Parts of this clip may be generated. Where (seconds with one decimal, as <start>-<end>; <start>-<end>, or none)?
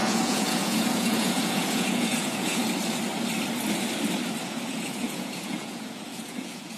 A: 0.0-2.6; 4.4-6.8